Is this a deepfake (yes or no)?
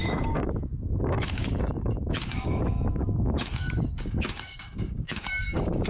yes